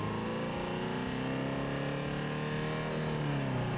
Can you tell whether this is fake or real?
real